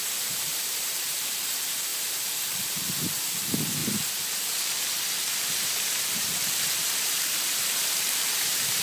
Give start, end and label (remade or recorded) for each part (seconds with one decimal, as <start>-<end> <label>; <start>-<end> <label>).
0.0-8.8 remade